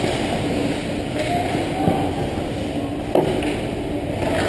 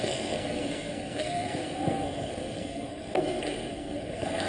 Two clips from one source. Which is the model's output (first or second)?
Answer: second